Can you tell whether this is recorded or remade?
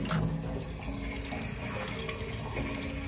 recorded